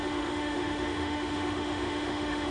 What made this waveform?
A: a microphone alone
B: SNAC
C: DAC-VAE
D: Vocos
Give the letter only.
C